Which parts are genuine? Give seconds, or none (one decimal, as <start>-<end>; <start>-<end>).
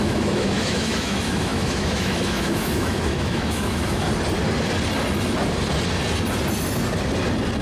4.1-7.6